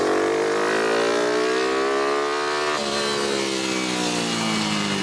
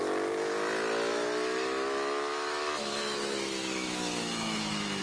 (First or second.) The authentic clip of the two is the first